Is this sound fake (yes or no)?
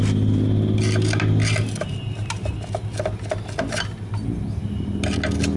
no